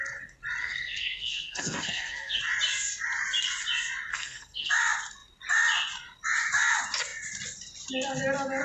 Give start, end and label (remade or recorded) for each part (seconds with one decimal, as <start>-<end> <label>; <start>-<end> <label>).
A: 0.0-0.6 recorded; 0.6-2.4 remade; 2.4-4.1 recorded; 4.1-4.7 remade; 4.7-8.6 recorded